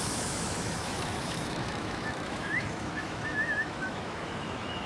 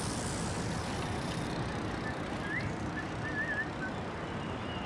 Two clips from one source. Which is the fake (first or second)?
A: first